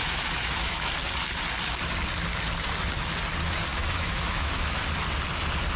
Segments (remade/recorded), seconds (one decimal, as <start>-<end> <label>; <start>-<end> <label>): 0.0-0.9 remade; 0.9-3.7 recorded; 3.7-4.9 remade; 4.9-5.8 recorded